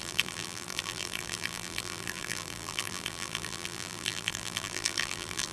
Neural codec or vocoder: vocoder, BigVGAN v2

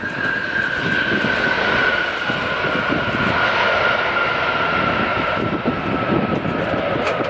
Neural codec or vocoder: none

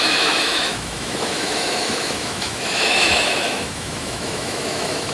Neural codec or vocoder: autoencoder, DAC-VAE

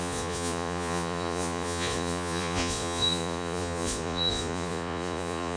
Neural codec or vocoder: vocoder, Vocos